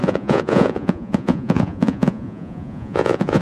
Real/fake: fake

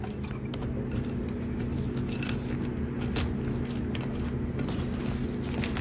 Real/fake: real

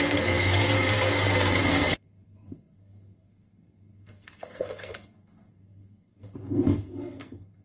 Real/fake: fake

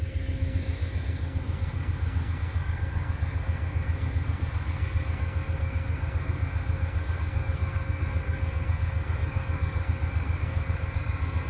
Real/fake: fake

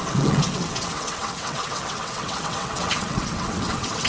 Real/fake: fake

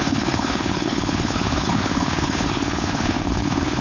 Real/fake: fake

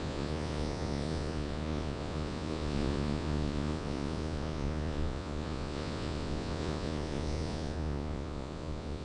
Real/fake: fake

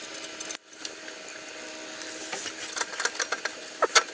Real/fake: real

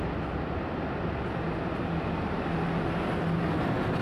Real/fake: real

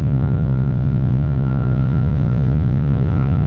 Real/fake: fake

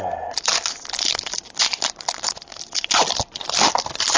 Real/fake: real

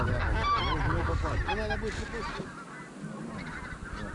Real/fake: real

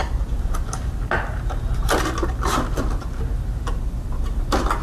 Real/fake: real